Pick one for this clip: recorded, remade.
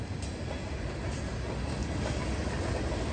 recorded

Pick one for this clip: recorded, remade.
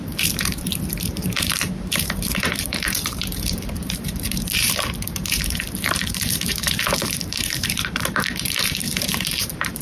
remade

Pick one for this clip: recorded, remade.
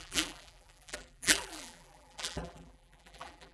remade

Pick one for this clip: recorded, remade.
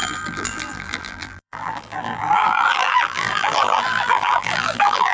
remade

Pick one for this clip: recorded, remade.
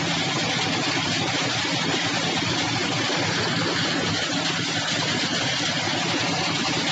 recorded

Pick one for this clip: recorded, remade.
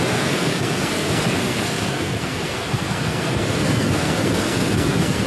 remade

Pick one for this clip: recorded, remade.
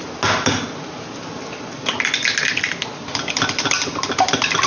recorded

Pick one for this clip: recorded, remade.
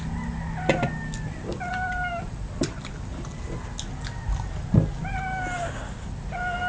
recorded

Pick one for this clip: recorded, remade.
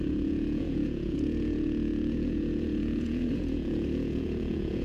remade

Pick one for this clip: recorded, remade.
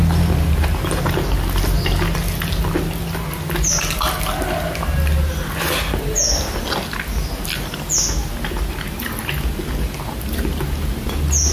recorded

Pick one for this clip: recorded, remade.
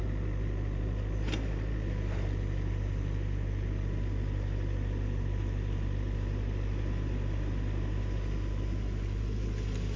recorded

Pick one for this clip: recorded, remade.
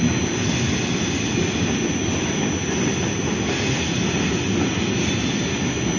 recorded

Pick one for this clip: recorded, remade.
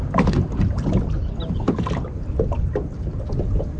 recorded